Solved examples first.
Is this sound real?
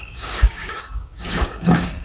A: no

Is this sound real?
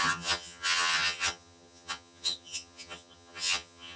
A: no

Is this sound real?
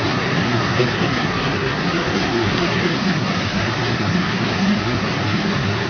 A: no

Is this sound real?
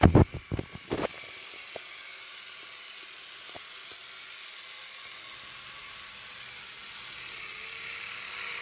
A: yes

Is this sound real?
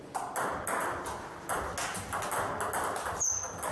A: yes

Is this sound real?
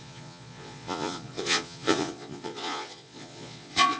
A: no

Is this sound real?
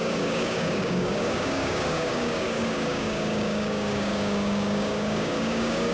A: no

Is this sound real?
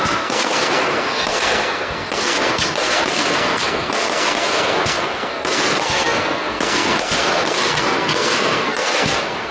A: no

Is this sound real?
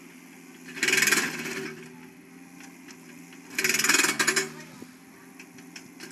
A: yes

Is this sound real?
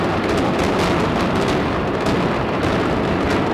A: yes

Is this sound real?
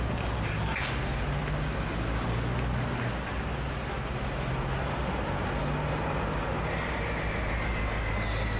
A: yes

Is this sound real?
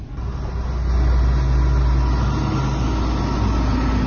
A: yes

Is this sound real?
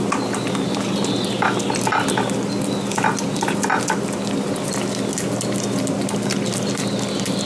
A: yes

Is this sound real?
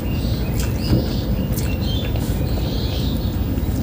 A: yes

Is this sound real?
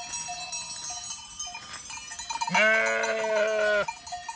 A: yes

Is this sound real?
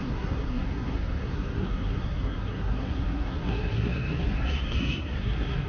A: no